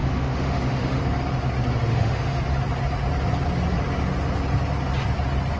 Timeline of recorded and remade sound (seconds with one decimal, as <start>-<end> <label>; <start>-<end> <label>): 0.0-1.0 remade; 1.0-1.9 recorded; 1.9-2.4 remade; 2.4-5.6 recorded